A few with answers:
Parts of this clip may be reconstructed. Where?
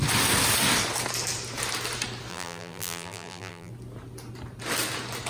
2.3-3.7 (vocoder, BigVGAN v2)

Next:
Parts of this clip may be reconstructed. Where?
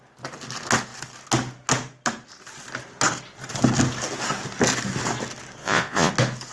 5.6-6.1 (vocoder, Vocos)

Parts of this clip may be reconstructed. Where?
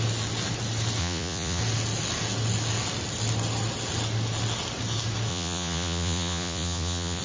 1.0-1.6 (vocoder, Vocos); 5.3-7.2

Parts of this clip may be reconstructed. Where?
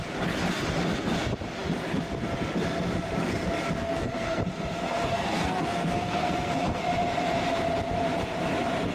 3.8-4.4 (codec, SNAC); 5.1-6.8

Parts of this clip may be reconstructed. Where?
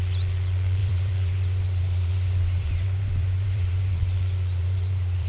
0.8-4.0 (vocoder, BigVGAN v2); 4.6-5.3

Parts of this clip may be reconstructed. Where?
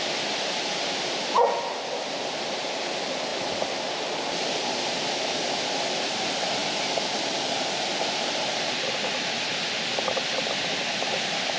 6.6-7.3 (vocoder, BigVGAN v2)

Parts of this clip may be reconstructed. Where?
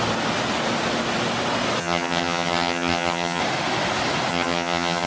1.8-3.4 (vocoder, HiFi-GAN); 4.3-5.1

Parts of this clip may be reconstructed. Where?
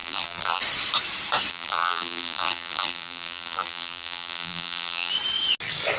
0.0-0.6 (vocoder, BigVGAN v2); 1.5-5.1